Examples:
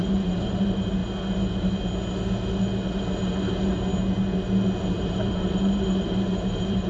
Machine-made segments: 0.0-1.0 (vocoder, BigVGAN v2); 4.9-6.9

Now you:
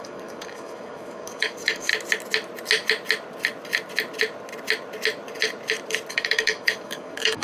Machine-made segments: 0.0-1.9 (codec, DAC); 6.1-7.4